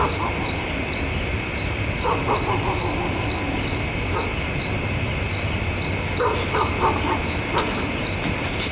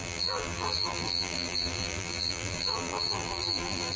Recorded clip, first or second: first